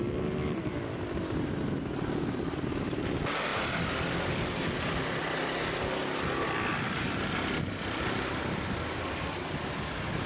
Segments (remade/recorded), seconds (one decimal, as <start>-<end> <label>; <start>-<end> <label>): 0.0-10.3 recorded